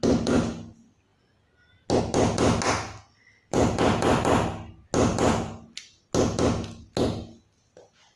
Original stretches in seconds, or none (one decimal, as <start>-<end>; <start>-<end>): 0.0-3.2; 4.3-5.1; 5.8-8.2